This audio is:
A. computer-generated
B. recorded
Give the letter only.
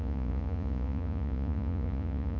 A